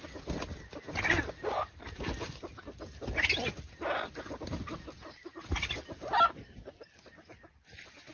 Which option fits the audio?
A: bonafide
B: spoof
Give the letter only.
A